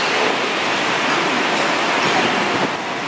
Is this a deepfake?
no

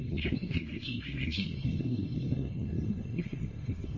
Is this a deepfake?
yes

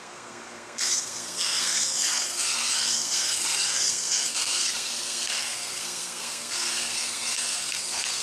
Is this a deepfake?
yes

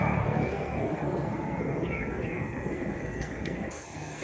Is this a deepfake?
yes